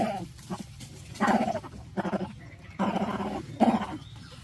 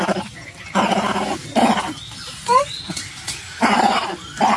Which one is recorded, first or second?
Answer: second